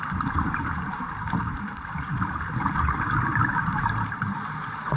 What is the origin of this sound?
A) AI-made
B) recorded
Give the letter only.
A